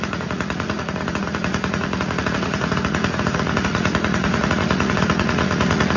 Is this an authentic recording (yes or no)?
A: no